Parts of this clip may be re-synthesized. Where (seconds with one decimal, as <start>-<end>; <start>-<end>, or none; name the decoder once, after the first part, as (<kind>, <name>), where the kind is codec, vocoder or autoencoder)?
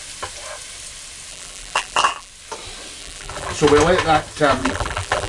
1.3-2.3 (vocoder, BigVGAN v2); 3.0-3.5; 4.6-5.3